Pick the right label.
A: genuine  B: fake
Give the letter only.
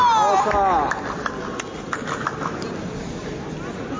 A